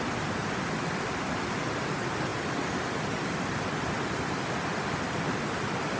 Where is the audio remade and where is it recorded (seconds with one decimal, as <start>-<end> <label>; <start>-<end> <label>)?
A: 0.0-6.0 recorded